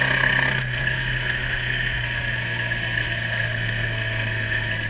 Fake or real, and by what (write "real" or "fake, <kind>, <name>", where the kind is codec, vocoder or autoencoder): fake, codec, SNAC